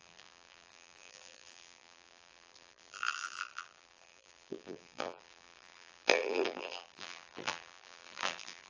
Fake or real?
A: fake